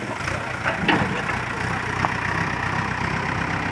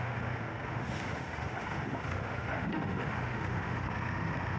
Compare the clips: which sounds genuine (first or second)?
first